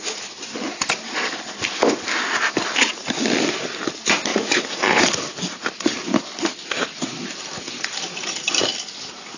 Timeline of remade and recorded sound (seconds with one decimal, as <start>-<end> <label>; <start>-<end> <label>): 0.0-4.3 recorded; 4.3-5.0 remade; 5.0-9.4 recorded